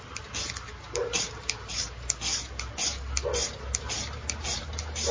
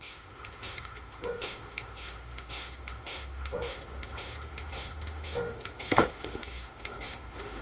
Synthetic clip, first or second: second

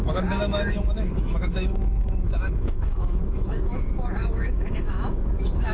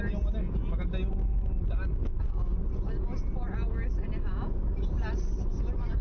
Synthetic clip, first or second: first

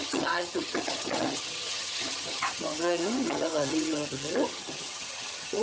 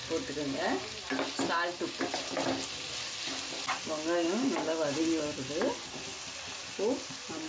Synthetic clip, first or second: first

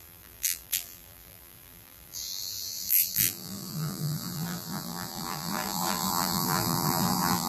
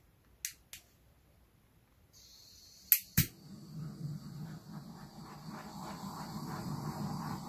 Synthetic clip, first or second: first